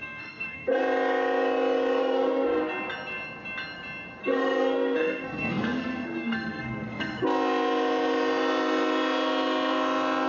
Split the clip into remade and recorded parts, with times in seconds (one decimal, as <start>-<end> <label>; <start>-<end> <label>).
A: 0.0-0.8 remade; 0.8-2.0 recorded; 2.0-2.6 remade; 2.6-4.2 recorded; 4.2-7.2 remade; 7.2-10.3 recorded